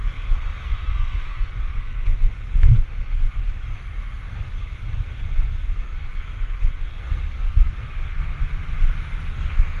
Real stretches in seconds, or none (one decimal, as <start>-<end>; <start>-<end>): 3.4-4.2; 8.3-9.3